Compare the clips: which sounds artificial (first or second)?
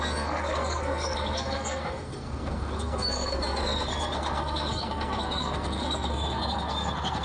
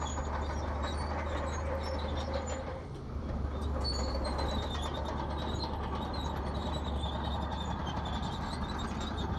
first